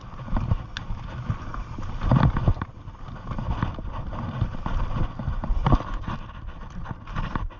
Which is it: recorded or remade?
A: recorded